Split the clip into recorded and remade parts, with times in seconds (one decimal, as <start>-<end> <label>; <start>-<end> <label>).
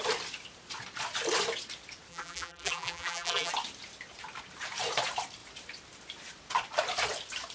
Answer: 0.0-2.1 recorded; 2.1-3.5 remade; 3.5-7.5 recorded